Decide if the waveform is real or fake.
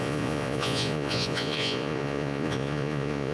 fake